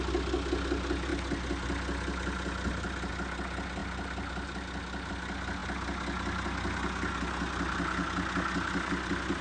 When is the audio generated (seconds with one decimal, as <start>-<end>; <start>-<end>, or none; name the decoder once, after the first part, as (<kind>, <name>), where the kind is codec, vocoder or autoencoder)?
none

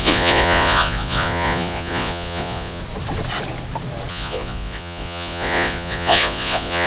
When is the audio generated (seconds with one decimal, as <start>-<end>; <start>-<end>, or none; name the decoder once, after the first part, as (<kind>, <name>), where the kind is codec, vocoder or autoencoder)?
0.0-2.8 (vocoder, Vocos); 4.1-6.9

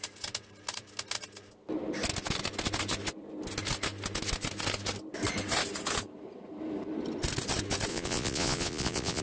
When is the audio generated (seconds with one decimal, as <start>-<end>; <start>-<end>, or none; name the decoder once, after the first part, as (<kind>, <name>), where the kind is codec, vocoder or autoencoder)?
7.9-9.2 (vocoder, Vocos)